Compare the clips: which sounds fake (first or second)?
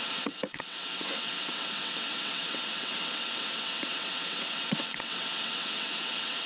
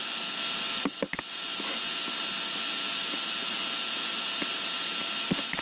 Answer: first